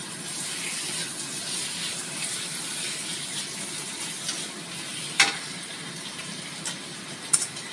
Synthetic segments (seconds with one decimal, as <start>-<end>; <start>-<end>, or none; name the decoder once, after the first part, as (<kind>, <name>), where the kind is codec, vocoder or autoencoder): 1.9-3.2 (vocoder, BigVGAN v2)